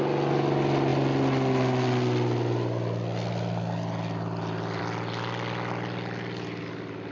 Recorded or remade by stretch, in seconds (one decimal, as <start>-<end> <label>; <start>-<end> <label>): 0.0-7.1 recorded